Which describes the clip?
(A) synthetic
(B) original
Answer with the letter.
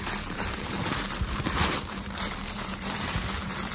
A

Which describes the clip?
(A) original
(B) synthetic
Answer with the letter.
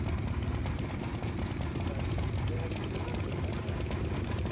A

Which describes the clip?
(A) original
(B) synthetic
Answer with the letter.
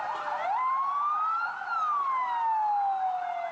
A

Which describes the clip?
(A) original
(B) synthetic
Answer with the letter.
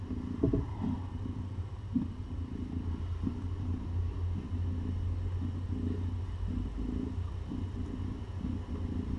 A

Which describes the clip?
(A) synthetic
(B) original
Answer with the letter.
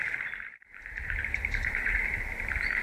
A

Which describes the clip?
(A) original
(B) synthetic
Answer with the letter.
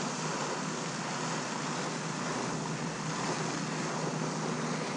A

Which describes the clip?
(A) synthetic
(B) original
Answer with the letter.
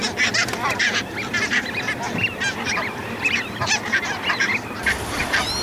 A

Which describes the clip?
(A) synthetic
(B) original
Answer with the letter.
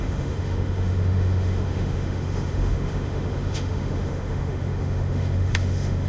A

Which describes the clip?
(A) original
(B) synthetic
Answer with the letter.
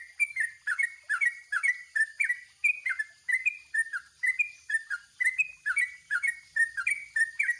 A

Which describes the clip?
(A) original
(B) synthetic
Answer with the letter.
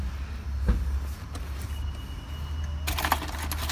A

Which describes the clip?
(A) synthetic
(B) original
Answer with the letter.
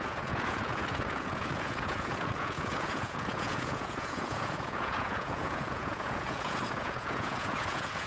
A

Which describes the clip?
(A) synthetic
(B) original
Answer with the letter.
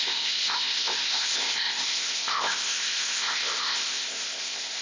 A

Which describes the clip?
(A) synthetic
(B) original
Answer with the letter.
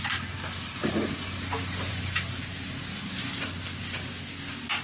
B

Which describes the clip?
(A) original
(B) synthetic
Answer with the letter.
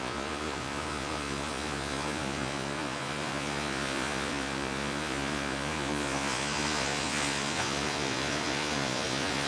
B